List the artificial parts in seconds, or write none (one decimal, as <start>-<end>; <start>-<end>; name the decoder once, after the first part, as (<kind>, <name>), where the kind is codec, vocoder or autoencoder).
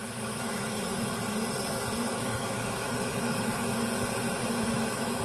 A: 0.0-1.2 (autoencoder, DAC-VAE); 2.2-3.8; 4.5-5.2